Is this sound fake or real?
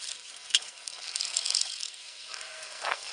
fake